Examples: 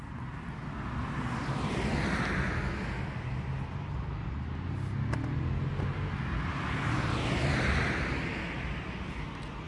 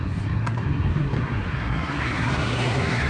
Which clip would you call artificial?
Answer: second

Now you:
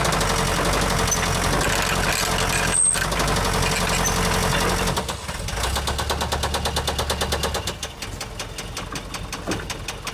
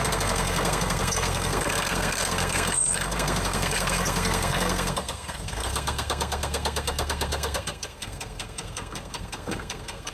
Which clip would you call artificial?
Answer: second